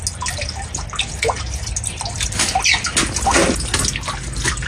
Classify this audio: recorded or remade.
recorded